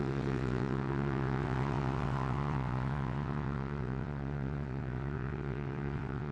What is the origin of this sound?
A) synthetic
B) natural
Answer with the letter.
A